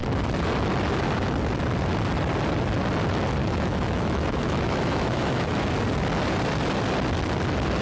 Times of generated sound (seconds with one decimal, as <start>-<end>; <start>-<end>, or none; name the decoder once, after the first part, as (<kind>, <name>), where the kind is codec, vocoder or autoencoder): 3.4-5.7 (autoencoder, DAC-VAE)